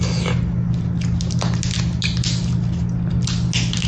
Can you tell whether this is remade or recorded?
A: recorded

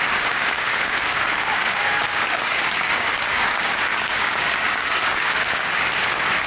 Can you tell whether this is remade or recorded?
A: remade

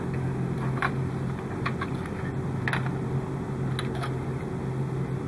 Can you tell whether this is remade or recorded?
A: recorded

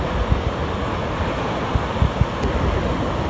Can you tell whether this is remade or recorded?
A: recorded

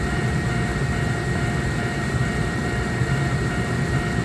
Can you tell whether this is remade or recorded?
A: remade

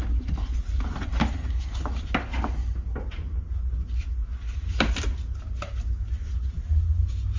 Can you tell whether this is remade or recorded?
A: recorded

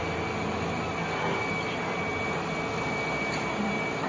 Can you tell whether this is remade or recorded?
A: recorded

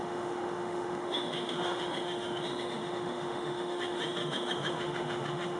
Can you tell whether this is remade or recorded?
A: remade